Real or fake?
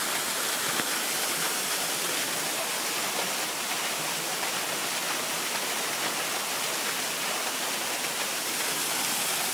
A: real